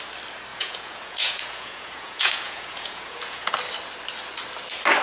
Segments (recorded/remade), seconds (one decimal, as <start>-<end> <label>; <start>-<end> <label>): 0.0-0.5 recorded; 0.5-3.5 remade; 3.5-5.0 recorded